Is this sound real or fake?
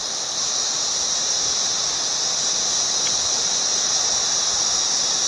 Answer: fake